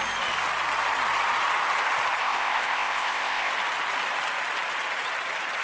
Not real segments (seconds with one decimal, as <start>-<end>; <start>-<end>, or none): 2.2-3.5